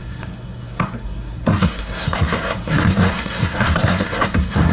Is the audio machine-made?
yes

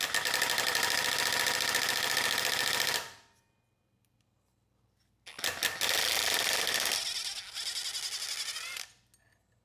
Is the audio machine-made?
no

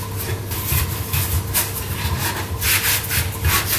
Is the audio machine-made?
no